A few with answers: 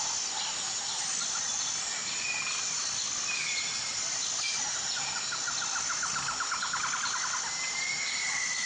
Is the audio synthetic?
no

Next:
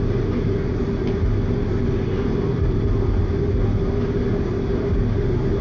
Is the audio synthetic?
no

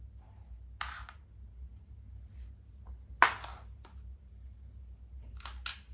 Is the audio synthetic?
no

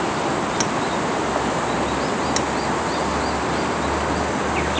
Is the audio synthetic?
no